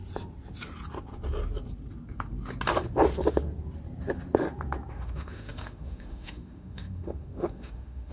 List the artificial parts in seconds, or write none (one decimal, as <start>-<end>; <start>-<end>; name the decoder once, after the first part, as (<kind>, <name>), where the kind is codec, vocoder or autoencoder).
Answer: 4.9-8.1 (autoencoder, DAC-VAE)